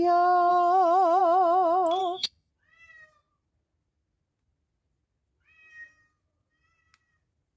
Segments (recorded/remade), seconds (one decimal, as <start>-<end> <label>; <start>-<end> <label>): 0.0-0.5 recorded; 0.5-1.2 remade; 1.2-2.0 recorded; 2.0-2.5 remade; 2.5-7.6 recorded